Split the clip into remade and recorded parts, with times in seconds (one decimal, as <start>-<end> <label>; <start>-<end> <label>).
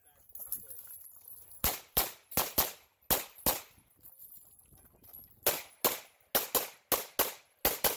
0.0-0.4 recorded; 0.4-2.3 remade; 2.3-8.0 recorded